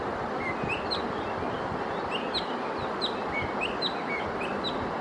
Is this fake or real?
real